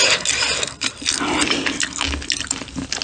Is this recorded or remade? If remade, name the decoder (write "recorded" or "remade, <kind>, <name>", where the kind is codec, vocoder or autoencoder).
recorded